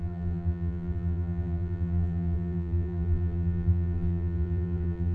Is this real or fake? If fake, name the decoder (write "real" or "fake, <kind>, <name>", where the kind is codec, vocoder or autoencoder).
fake, vocoder, BigVGAN v2